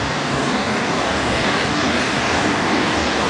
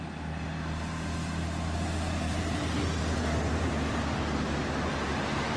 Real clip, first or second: second